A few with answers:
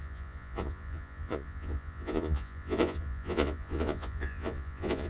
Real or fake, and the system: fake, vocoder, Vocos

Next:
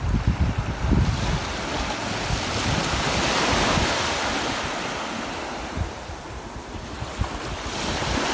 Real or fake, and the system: real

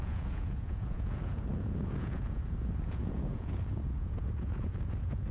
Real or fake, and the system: fake, vocoder, Vocos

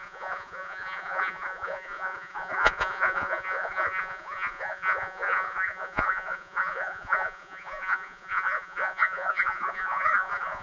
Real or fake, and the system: fake, vocoder, Vocos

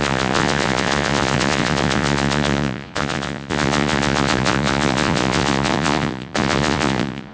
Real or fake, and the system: fake, vocoder, Vocos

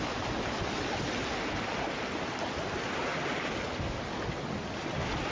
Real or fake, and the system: real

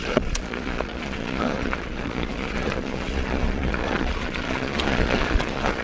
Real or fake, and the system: fake, vocoder, Vocos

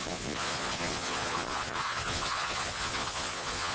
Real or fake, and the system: fake, vocoder, Vocos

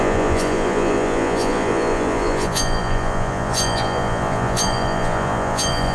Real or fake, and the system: fake, vocoder, Vocos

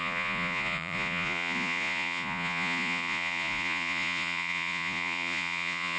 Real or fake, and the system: fake, vocoder, Vocos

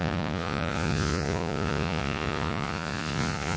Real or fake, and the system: fake, vocoder, Vocos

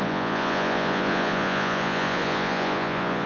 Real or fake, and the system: fake, vocoder, Vocos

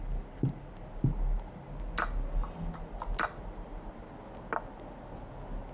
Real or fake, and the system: real